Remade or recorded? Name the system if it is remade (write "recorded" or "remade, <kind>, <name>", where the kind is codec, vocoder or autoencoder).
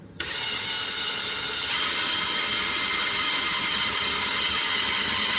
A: remade, vocoder, HiFi-GAN